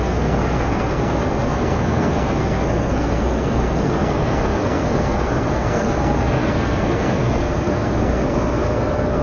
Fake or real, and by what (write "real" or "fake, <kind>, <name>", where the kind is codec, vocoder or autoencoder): fake, codec, SNAC